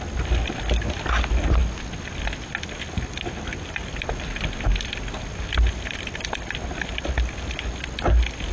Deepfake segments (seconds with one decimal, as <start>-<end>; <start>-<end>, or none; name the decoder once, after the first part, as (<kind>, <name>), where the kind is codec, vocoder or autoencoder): none